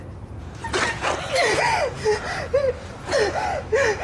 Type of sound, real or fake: real